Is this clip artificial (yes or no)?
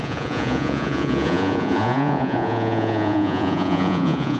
yes